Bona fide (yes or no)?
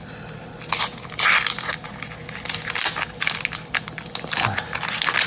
yes